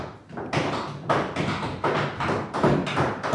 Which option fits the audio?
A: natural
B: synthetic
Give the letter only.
A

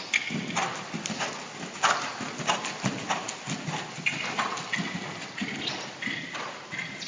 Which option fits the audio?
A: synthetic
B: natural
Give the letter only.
B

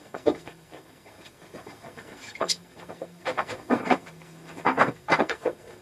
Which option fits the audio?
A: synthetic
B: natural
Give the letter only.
A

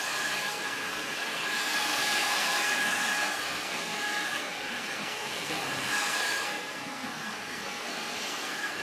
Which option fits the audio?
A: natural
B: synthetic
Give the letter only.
B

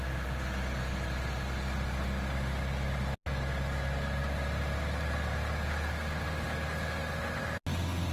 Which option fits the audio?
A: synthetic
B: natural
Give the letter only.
B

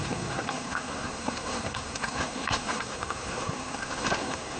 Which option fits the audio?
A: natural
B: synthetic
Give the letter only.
B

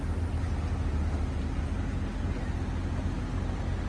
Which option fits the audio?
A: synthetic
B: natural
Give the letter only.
B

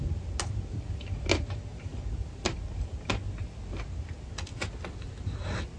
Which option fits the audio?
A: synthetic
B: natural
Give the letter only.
B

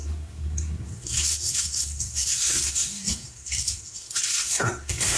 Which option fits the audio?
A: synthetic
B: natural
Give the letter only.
A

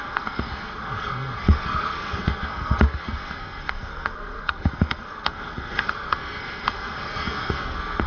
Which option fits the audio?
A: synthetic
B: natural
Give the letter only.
A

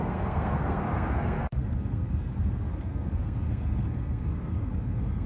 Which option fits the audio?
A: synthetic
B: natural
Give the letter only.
A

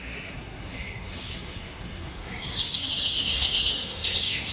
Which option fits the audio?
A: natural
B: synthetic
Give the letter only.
B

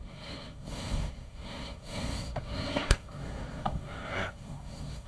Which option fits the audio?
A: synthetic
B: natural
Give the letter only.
A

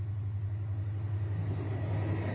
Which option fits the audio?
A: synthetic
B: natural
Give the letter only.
B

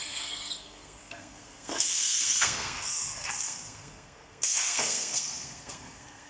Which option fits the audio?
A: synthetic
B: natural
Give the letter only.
A